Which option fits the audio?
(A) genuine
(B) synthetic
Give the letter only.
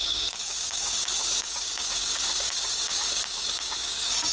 B